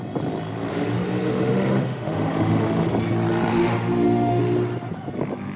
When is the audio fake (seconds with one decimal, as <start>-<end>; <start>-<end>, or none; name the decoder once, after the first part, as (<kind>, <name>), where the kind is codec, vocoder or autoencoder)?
0.7-2.9 (autoencoder, DAC-VAE); 3.5-4.4